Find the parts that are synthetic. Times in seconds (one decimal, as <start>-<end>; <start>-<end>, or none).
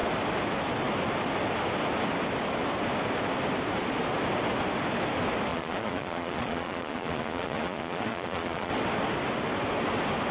5.5-8.7